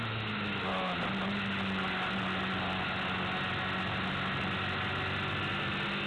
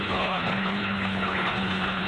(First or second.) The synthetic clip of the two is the second